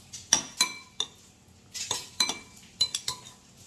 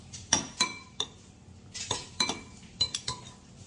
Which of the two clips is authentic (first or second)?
first